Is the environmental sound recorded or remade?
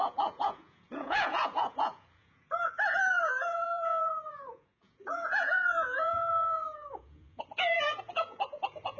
remade